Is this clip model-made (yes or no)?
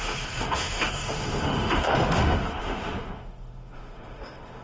yes